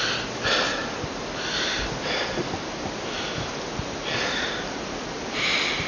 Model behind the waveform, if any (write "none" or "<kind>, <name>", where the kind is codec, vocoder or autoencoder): none